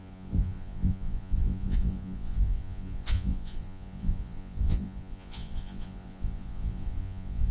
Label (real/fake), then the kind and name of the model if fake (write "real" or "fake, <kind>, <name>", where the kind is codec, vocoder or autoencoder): fake, vocoder, Vocos